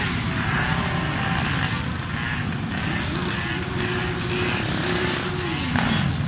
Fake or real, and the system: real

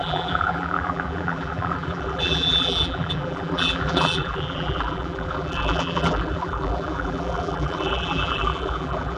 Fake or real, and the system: fake, vocoder, BigVGAN v2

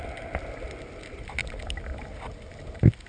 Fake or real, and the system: real